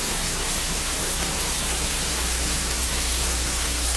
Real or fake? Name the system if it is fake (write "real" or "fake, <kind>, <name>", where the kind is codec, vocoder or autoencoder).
fake, codec, SNAC